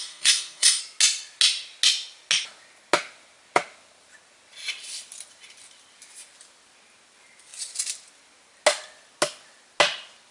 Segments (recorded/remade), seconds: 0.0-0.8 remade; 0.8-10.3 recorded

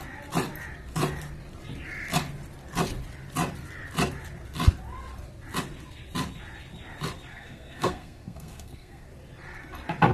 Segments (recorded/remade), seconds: 0.0-7.3 recorded; 7.3-9.1 remade; 9.1-10.1 recorded

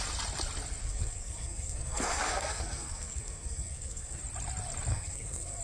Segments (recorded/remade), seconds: 0.0-0.8 recorded; 0.8-4.2 remade; 4.2-4.9 recorded; 4.9-5.6 remade